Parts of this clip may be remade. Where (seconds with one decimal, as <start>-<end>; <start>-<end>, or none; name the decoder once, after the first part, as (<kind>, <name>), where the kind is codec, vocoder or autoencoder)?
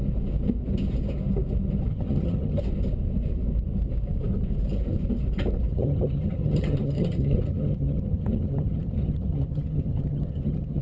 1.9-2.6 (vocoder, HiFi-GAN); 5.7-10.8